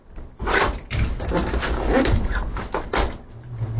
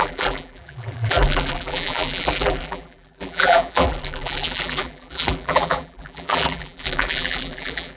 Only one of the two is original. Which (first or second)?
first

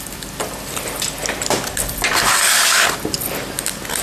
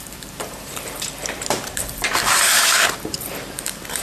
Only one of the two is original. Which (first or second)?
first